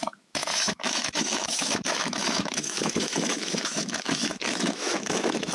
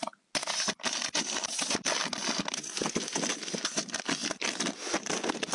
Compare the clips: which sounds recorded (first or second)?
second